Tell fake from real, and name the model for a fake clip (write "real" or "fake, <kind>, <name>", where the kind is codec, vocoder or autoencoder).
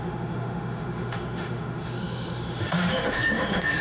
fake, autoencoder, DAC-VAE